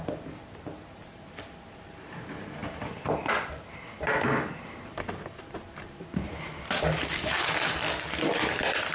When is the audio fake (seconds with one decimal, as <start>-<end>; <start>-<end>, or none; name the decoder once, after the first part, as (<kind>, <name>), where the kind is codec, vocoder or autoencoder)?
2.6-7.1 (vocoder, BigVGAN v2)